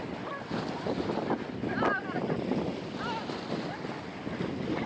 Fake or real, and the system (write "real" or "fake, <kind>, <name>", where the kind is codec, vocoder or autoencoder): real